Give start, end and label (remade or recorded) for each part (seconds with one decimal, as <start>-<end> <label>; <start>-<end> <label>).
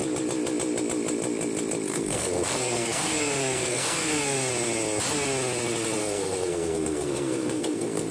0.0-1.9 recorded; 1.9-4.5 remade; 4.5-6.0 recorded; 6.0-8.1 remade